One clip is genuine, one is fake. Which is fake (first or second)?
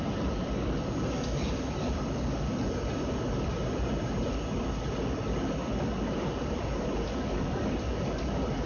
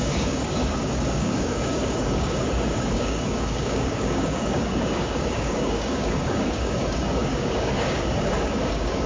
second